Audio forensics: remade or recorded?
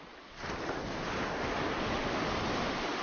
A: recorded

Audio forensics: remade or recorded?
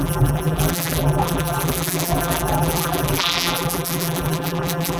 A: remade